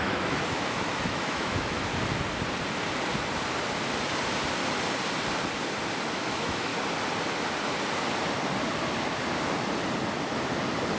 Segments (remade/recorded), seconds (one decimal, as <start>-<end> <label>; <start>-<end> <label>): 0.0-1.9 remade; 1.9-6.1 recorded; 6.1-6.7 remade; 6.7-11.0 recorded